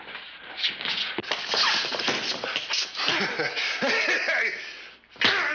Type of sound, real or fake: real